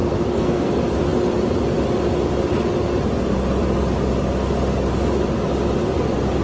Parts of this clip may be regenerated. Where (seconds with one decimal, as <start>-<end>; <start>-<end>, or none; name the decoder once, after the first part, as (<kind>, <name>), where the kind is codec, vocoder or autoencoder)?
0.0-0.7 (codec, SNAC)